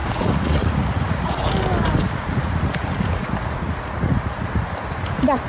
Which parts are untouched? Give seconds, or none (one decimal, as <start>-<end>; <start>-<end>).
1.4-2.0; 4.5-5.5

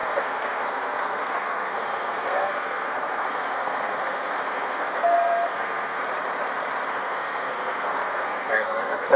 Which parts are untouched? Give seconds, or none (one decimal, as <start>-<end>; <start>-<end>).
6.0-6.9